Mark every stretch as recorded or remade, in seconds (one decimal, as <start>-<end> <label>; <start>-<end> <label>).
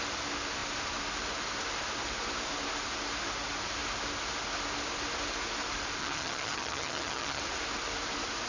0.0-6.0 recorded; 6.0-7.4 remade; 7.4-8.5 recorded